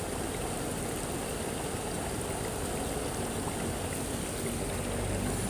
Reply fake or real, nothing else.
real